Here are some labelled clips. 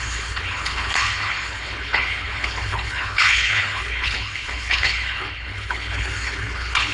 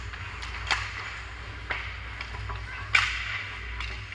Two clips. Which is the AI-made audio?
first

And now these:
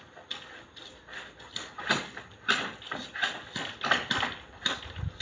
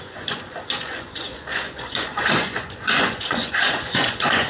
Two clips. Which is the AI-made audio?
second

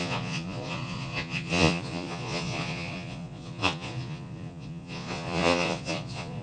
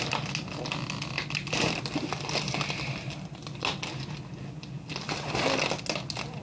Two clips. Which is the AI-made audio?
first